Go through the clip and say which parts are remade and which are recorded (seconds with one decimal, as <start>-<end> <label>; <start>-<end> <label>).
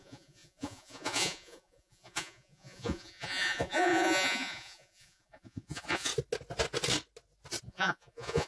0.0-6.1 remade; 6.1-7.6 recorded; 7.6-8.5 remade